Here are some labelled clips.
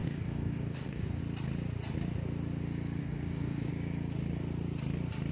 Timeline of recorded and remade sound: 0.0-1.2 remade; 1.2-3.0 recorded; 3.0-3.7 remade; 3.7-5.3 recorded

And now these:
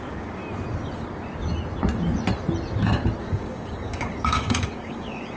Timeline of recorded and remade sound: 0.0-0.4 remade; 0.4-3.2 recorded; 3.2-5.4 remade

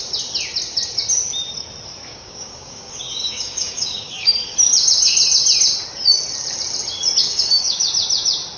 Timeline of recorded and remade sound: 0.0-2.1 recorded; 2.1-4.3 remade; 4.3-7.2 recorded; 7.2-7.9 remade; 7.9-8.6 recorded

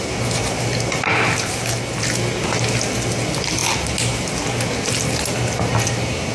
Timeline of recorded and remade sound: 0.0-6.3 recorded

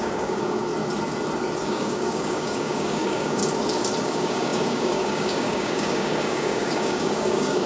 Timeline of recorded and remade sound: 0.0-0.7 remade; 0.7-1.6 recorded; 1.6-3.4 remade; 3.4-4.0 recorded; 4.0-7.7 remade

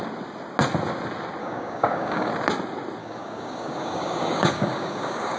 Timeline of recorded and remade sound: 0.0-1.4 recorded; 1.4-2.3 remade; 2.3-3.0 recorded; 3.0-5.4 remade

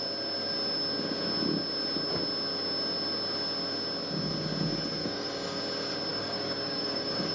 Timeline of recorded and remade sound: 0.0-5.0 recorded; 5.0-5.6 remade; 5.6-6.1 recorded; 6.1-7.3 remade